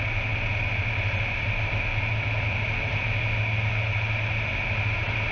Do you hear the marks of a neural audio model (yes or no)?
no